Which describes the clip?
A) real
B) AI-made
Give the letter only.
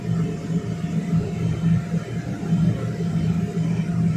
A